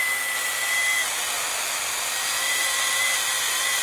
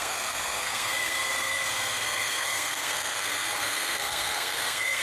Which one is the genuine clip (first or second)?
first